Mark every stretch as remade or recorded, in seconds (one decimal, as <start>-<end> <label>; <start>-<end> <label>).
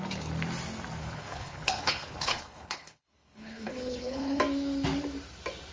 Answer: 0.0-1.0 recorded; 1.0-4.4 remade; 4.4-5.7 recorded